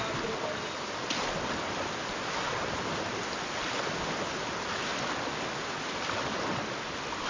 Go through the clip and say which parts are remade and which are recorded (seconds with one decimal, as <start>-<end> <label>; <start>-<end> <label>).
0.0-7.3 recorded